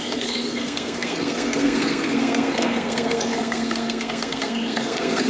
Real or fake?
fake